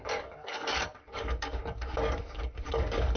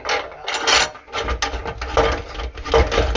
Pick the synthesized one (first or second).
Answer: first